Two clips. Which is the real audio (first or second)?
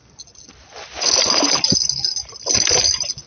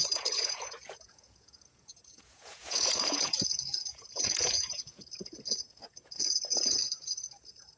first